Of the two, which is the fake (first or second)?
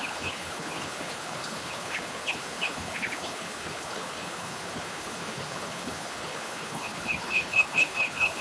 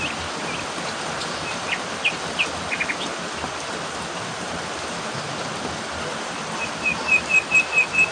first